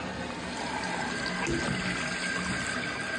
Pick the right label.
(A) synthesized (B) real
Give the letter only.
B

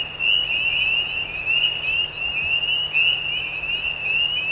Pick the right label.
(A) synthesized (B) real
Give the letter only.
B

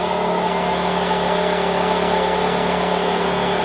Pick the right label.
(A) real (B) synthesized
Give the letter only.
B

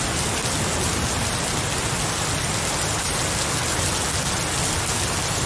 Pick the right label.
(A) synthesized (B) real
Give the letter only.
B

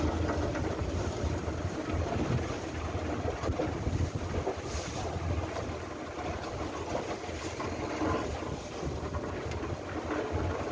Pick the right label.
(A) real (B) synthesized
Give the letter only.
A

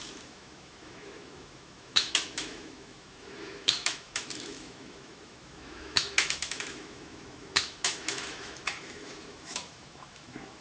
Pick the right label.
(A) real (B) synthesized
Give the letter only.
B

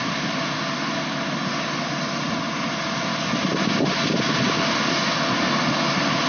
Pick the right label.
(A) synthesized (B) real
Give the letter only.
B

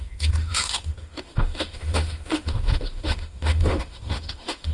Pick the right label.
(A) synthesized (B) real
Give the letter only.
A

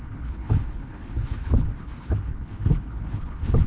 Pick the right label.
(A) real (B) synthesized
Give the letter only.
B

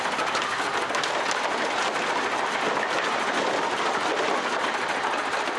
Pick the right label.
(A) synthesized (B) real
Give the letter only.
B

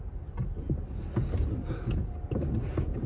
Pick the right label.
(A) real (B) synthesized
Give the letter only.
A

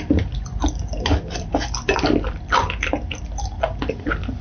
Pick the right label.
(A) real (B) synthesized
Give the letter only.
A